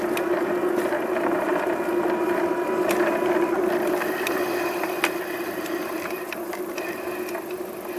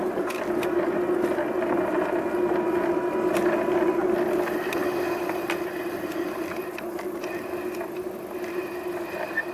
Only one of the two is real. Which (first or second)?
second